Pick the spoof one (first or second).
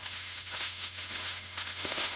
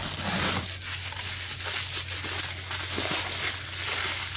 first